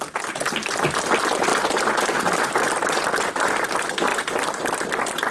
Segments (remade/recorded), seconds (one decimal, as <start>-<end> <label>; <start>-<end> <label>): 0.0-5.3 recorded